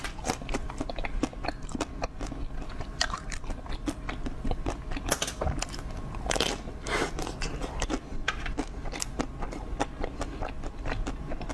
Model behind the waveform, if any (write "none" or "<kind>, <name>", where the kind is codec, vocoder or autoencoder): none